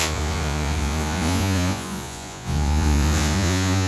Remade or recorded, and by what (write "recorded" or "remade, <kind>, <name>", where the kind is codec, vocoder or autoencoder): remade, vocoder, Vocos